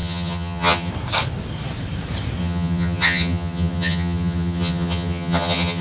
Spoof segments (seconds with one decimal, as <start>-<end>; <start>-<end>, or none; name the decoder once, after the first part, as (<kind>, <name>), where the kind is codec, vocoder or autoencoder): 0.0-0.9 (vocoder, HiFi-GAN); 2.4-5.8